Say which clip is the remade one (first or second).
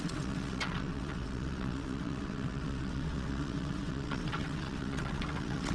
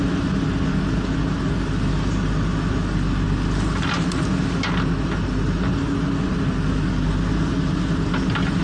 first